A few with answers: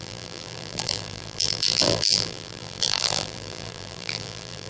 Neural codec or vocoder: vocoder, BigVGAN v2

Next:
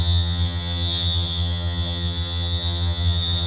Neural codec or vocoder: vocoder, HiFi-GAN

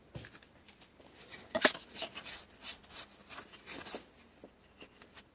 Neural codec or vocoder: none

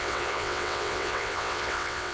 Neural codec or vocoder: vocoder, WaveNeXt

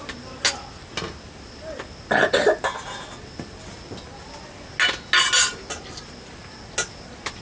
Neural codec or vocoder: none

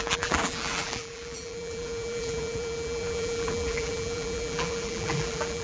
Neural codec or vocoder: vocoder, BigVGAN v2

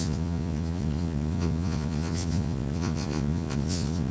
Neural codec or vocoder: vocoder, Vocos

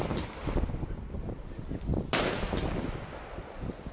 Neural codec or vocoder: none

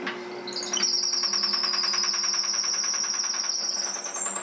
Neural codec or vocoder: none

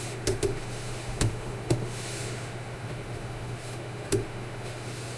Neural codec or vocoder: autoencoder, DAC-VAE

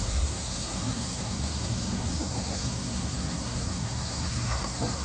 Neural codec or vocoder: codec, SNAC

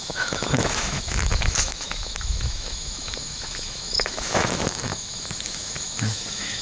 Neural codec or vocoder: autoencoder, DAC-VAE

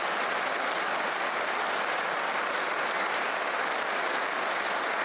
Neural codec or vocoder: none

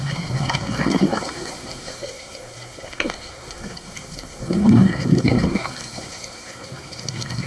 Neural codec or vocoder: codec, SNAC